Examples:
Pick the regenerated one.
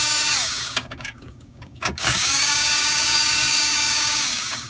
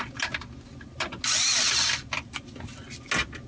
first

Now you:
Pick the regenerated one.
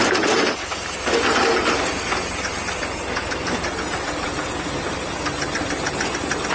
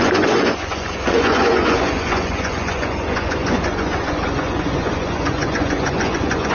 second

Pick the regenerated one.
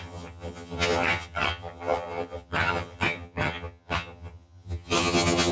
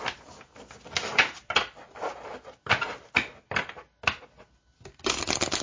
first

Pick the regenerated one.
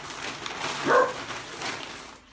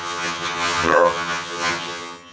second